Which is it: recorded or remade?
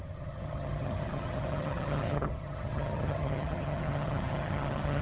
remade